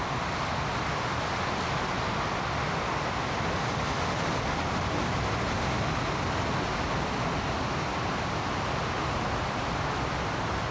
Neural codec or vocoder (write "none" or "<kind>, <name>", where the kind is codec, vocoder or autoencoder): none